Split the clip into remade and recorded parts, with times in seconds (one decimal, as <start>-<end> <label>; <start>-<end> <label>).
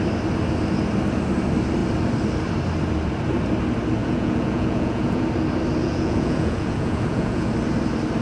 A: 0.0-4.0 recorded; 4.0-5.2 remade; 5.2-5.8 recorded; 5.8-7.5 remade; 7.5-8.2 recorded